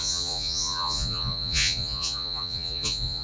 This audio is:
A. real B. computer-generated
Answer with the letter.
B